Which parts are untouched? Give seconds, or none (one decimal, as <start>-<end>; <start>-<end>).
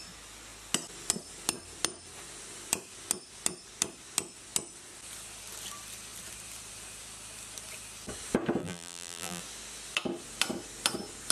0.0-8.6; 9.4-11.3